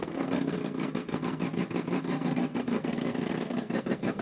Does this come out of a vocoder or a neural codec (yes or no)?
yes